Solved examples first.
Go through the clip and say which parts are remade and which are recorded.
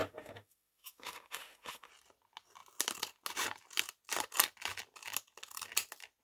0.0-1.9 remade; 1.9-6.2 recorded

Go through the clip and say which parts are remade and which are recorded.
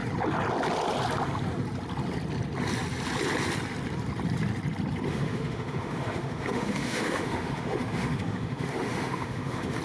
0.0-5.1 recorded; 5.1-9.8 remade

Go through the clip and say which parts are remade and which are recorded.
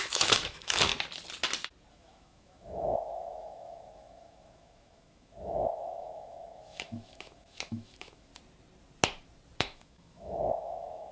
0.0-0.9 remade; 0.9-1.9 recorded; 1.9-8.3 remade; 8.3-9.6 recorded; 9.6-11.1 remade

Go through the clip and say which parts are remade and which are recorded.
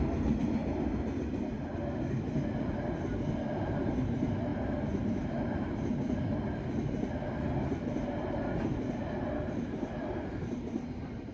0.0-11.3 recorded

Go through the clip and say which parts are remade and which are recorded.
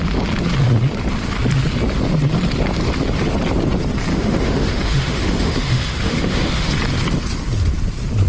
0.0-4.1 recorded; 4.1-6.7 remade; 6.7-8.3 recorded